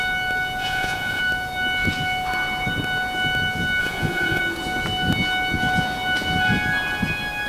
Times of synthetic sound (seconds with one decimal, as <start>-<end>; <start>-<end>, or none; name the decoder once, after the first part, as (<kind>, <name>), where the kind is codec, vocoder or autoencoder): 0.6-1.2 (vocoder, Vocos); 3.8-4.4